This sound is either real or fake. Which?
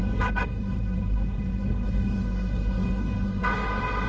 fake